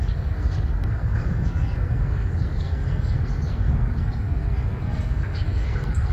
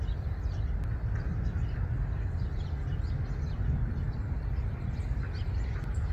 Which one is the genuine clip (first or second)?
second